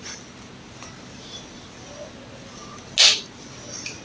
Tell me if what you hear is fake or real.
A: real